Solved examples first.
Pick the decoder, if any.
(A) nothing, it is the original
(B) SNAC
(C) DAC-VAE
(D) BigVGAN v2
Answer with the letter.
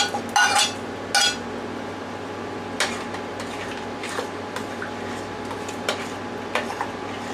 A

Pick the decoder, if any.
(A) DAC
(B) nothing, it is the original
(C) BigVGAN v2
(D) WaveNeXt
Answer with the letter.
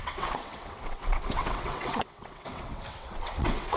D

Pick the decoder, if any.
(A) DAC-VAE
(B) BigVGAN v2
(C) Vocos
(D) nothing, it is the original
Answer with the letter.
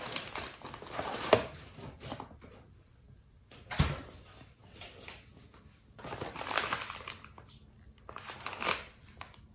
B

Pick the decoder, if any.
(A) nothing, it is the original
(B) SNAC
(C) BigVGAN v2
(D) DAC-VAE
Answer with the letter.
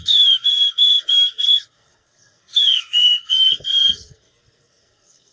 B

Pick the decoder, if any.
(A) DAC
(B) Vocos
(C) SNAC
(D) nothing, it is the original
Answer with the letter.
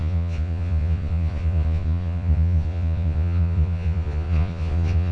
B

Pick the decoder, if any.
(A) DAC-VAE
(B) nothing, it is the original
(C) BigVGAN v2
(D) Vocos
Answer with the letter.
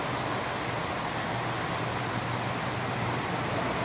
B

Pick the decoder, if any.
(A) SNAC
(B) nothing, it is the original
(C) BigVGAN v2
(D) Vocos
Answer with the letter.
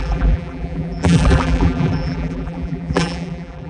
C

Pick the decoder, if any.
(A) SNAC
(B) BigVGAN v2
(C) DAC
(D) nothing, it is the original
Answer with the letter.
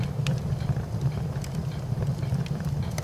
B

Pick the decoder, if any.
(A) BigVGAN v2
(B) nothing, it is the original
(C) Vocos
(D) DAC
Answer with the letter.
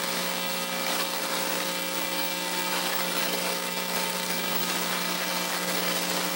D